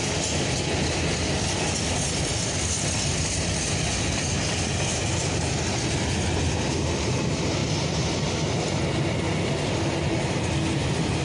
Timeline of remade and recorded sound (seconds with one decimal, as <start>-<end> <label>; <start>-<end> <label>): 0.0-11.2 recorded